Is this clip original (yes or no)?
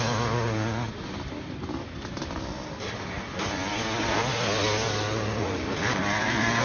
yes